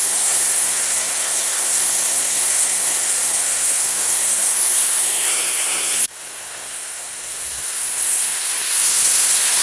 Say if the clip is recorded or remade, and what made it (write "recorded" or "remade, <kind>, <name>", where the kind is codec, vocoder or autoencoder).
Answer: remade, codec, SNAC